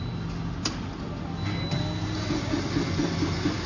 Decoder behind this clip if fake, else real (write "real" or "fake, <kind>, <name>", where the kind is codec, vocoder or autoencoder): real